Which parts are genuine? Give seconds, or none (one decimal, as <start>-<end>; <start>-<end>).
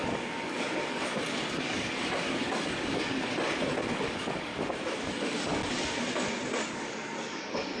3.3-3.8; 4.5-5.0; 5.6-6.7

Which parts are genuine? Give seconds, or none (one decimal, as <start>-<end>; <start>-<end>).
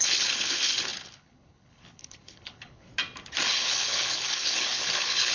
2.9-3.5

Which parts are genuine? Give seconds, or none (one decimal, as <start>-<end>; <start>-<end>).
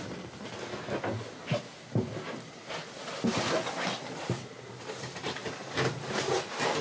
0.0-5.4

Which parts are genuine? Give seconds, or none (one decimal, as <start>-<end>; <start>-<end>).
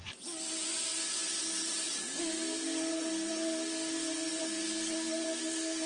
0.0-5.9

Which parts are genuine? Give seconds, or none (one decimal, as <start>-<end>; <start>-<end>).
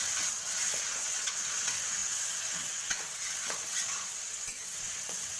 none